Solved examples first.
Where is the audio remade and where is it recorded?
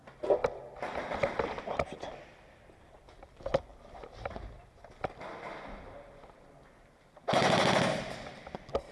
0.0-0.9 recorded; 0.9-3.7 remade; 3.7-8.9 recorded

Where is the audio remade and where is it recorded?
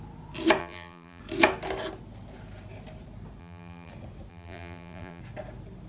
0.0-0.6 recorded; 0.6-1.2 remade; 1.2-3.4 recorded; 3.4-3.9 remade; 3.9-4.3 recorded; 4.3-5.2 remade; 5.2-5.9 recorded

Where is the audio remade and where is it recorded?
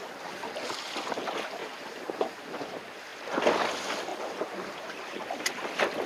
0.0-1.6 recorded; 1.6-2.4 remade; 2.4-4.1 recorded; 4.1-5.2 remade; 5.2-6.1 recorded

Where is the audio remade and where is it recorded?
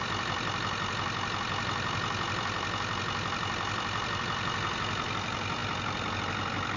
0.0-6.8 recorded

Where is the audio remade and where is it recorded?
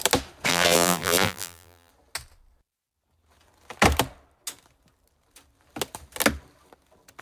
0.0-0.5 recorded; 0.5-1.9 remade; 1.9-7.2 recorded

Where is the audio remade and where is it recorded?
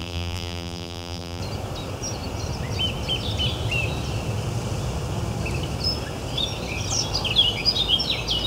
0.0-1.4 remade; 1.4-8.5 recorded